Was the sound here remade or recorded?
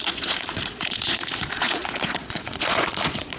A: remade